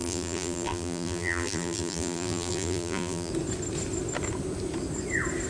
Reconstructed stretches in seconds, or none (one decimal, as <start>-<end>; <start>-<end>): 0.0-3.3